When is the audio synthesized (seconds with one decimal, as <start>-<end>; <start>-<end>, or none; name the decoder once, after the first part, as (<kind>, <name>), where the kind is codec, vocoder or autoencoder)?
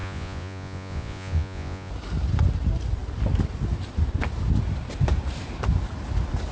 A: 0.0-1.9 (vocoder, Vocos)